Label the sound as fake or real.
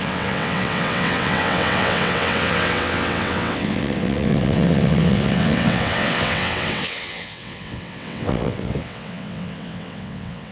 fake